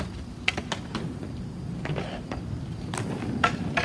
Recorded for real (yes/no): yes